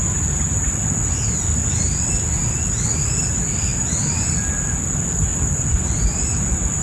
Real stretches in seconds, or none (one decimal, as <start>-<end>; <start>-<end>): 0.0-6.8